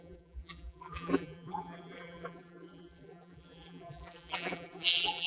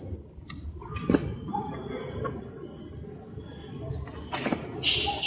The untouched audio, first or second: second